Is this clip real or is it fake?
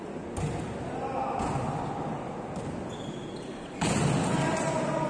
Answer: real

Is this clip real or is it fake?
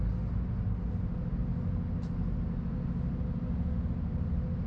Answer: real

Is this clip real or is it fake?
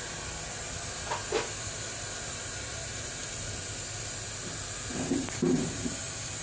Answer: real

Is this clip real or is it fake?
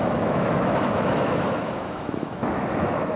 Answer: fake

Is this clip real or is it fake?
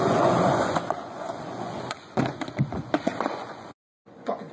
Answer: fake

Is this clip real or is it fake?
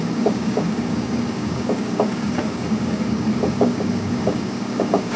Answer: fake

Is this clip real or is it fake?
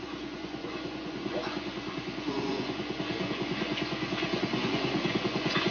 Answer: fake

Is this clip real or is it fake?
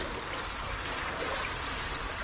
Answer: real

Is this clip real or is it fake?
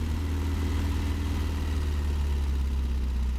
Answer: real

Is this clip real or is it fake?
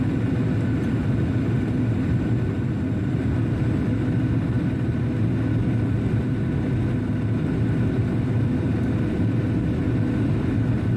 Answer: real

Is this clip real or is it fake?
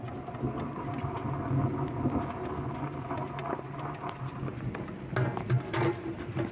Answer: real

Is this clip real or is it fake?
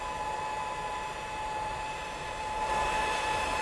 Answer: real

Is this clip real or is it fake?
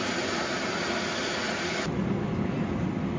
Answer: real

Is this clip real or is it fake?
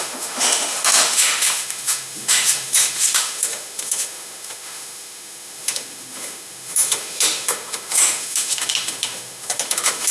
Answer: fake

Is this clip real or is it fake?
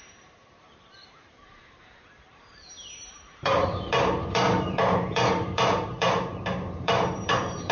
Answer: fake